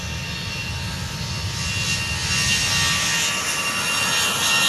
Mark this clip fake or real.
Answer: real